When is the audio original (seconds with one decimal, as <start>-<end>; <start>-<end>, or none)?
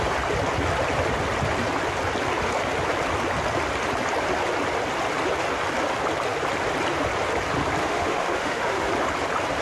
0.0-7.8; 8.9-9.6